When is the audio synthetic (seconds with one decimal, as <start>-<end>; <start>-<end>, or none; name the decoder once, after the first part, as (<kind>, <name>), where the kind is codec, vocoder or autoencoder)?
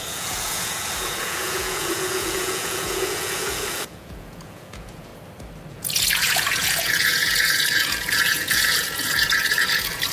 0.0-5.1 (vocoder, Vocos); 5.7-10.1